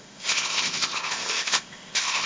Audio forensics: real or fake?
fake